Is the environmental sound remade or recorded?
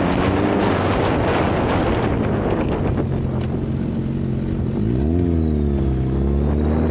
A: recorded